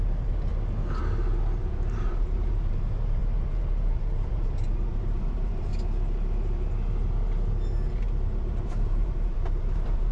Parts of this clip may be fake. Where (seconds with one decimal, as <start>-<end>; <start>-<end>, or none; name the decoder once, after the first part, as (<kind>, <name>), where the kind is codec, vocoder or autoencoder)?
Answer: 0.0-0.5 (vocoder, BigVGAN v2); 1.6-5.7; 7.9-10.1